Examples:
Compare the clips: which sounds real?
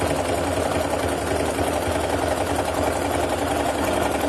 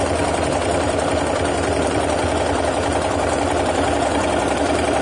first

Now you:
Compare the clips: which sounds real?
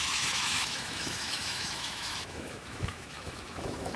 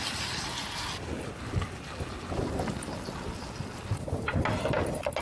second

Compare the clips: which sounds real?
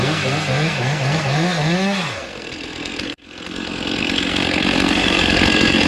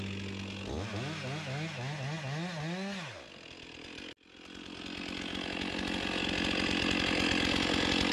second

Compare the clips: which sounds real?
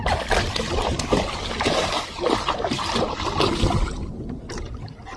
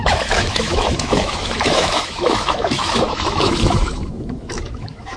first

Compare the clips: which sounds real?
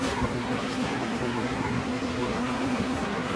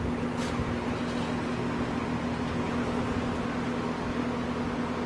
second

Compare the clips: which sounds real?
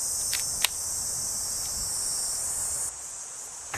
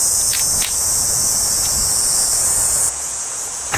first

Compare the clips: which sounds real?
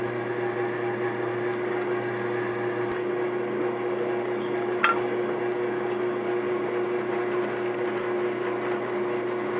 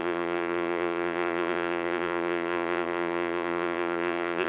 first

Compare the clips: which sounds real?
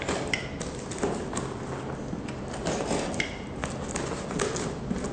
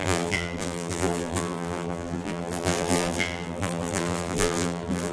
first